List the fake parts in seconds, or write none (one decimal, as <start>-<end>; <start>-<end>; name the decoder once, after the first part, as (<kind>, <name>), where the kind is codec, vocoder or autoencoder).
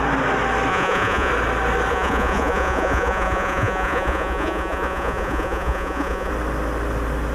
0.7-1.3 (vocoder, Vocos); 1.9-6.3